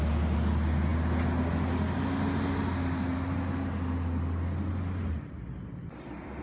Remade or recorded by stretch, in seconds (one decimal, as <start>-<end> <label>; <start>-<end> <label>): 0.0-6.4 recorded